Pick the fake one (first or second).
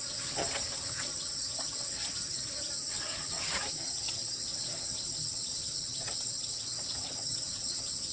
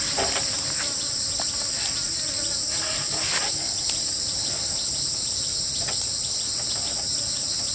first